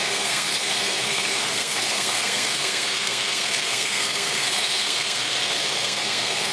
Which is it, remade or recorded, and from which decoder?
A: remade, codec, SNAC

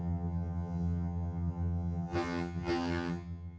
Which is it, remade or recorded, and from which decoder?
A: remade, vocoder, HiFi-GAN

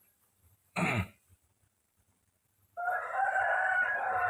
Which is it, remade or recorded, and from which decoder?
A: remade, vocoder, BigVGAN v2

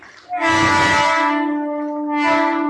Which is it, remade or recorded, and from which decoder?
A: recorded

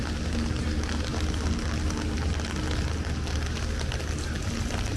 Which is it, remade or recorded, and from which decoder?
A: recorded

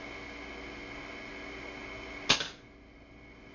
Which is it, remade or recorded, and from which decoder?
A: recorded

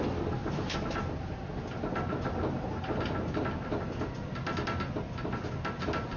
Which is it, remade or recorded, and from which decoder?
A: recorded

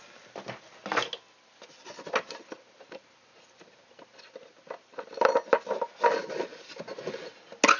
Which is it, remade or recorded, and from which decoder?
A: recorded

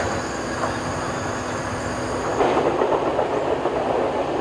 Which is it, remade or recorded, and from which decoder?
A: recorded